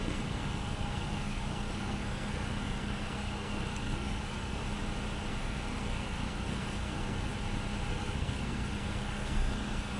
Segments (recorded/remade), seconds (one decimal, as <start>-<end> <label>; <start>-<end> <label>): 0.0-4.6 remade; 4.6-5.3 recorded; 5.3-7.3 remade; 7.3-7.9 recorded; 7.9-10.0 remade